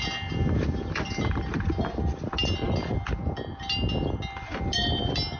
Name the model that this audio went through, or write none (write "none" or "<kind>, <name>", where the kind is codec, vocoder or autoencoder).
none